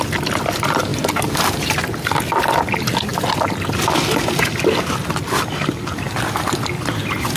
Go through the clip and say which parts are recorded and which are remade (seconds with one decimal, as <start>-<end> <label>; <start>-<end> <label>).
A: 0.0-7.4 recorded